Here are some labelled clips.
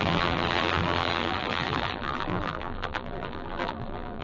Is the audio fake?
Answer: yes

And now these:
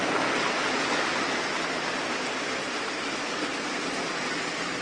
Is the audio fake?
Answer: no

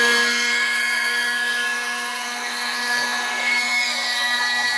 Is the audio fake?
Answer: yes